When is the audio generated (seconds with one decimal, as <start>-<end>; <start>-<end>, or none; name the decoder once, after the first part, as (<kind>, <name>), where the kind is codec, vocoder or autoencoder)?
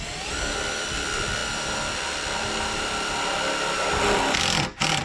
none